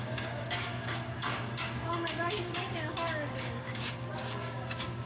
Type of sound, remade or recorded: remade